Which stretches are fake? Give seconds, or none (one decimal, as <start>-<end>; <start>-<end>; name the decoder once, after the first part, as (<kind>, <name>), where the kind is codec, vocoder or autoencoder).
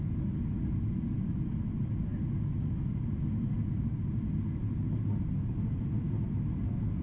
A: none